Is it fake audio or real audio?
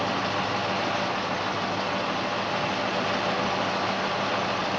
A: real